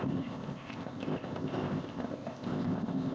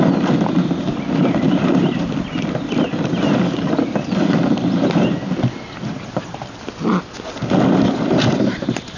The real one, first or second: second